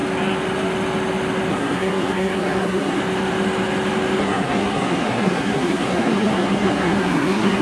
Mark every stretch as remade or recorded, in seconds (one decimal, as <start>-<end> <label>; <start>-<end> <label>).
0.0-1.5 recorded; 1.5-3.0 remade; 3.0-4.2 recorded; 4.2-7.6 remade